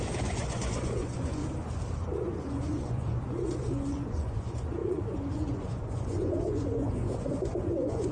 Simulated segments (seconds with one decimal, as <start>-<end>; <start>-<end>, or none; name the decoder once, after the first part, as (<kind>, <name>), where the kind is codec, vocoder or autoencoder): 0.0-1.4 (vocoder, Vocos); 2.1-8.1